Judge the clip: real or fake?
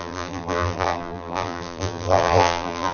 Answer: fake